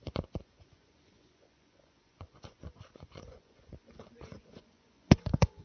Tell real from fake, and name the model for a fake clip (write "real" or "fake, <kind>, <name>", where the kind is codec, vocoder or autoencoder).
fake, vocoder, Vocos